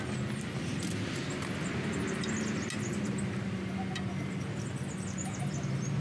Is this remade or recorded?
recorded